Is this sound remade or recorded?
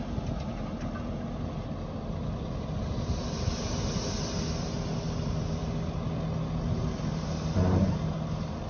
recorded